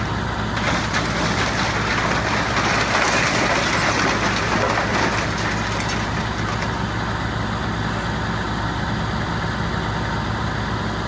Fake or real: real